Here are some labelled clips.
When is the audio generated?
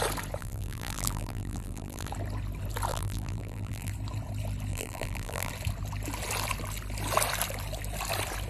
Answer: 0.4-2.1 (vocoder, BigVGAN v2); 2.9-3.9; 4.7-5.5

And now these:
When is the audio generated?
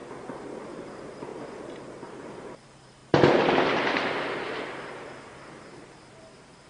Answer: 0.6-1.3 (vocoder, BigVGAN v2); 2.0-3.0; 5.4-6.7